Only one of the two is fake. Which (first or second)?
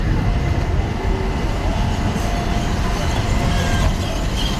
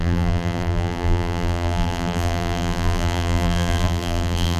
second